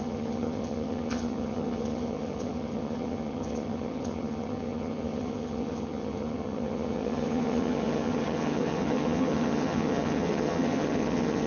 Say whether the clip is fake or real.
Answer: fake